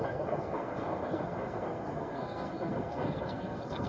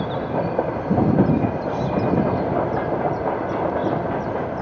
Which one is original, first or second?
second